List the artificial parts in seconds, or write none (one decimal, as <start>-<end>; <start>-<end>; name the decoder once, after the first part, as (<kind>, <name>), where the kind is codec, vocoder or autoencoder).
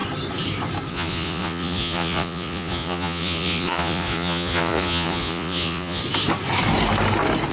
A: 0.9-6.0 (vocoder, Vocos)